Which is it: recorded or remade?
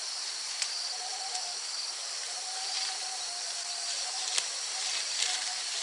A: recorded